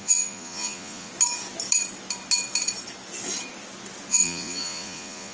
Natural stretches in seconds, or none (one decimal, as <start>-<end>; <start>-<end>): 1.1-4.1